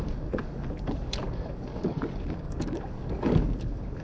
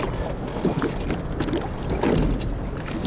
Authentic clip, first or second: second